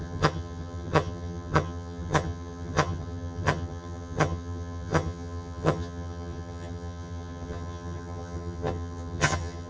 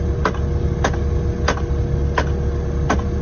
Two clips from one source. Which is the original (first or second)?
second